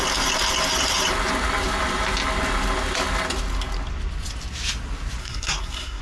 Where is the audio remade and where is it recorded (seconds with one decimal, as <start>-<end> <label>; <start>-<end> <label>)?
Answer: 0.0-5.2 recorded; 5.2-6.0 remade